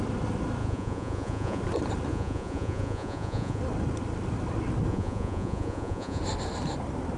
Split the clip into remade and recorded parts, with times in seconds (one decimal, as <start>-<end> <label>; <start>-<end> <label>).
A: 0.0-0.6 recorded; 0.6-1.6 remade; 1.6-2.1 recorded; 2.1-3.6 remade; 3.6-4.9 recorded; 4.9-6.2 remade; 6.2-7.2 recorded